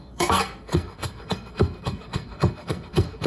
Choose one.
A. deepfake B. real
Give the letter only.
A